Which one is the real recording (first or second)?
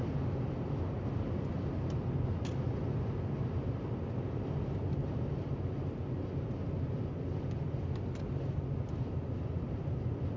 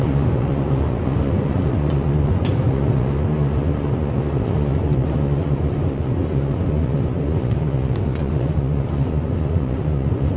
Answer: first